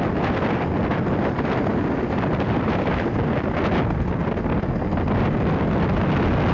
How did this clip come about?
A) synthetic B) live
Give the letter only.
B